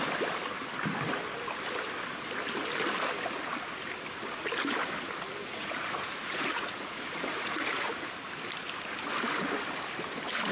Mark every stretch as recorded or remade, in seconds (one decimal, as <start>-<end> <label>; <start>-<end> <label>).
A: 0.0-5.4 recorded; 5.4-8.0 remade; 8.0-10.5 recorded